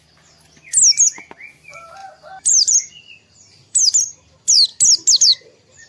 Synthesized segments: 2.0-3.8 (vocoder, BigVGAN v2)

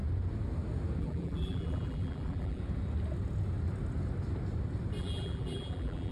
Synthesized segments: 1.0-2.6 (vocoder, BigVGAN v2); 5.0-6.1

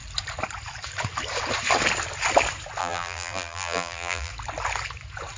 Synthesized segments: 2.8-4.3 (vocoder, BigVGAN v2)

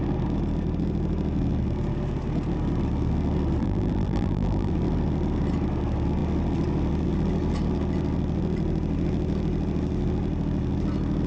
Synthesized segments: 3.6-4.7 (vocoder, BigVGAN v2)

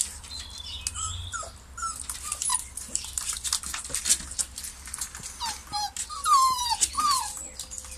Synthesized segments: 2.5-4.0 (vocoder, BigVGAN v2)

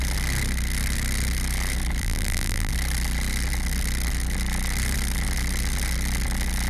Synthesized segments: 2.0-2.7 (vocoder, BigVGAN v2)

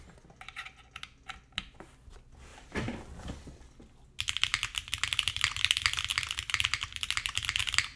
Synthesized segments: 2.5-3.3 (vocoder, BigVGAN v2)